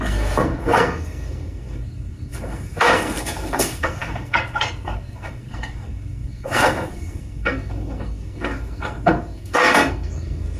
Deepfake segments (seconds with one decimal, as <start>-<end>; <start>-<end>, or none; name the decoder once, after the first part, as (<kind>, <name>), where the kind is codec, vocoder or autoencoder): 0.0-10.6 (codec, SNAC)